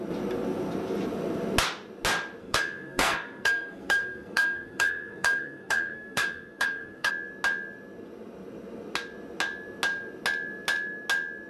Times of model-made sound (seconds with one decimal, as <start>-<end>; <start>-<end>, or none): 2.4-7.1